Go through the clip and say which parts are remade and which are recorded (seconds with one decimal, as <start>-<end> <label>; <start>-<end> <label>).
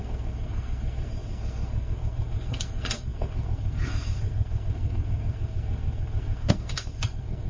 0.0-7.5 remade